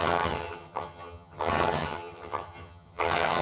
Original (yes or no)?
no